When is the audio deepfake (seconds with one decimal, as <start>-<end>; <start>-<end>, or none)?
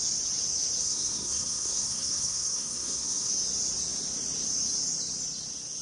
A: 0.8-3.3